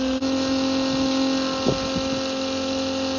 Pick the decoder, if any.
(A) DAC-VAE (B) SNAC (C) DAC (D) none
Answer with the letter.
D